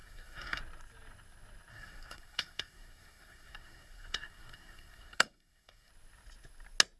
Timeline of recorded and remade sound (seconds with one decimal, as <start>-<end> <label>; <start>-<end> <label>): 0.0-0.6 remade; 0.6-1.7 recorded; 1.7-5.9 remade; 5.9-7.0 recorded